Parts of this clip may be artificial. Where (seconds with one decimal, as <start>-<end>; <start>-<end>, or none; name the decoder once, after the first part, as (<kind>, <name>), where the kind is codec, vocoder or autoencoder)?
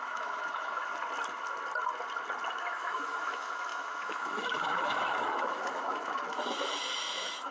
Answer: 0.0-0.9 (autoencoder, DAC-VAE); 2.5-7.5